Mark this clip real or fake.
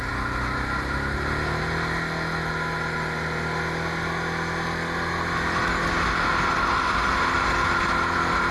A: real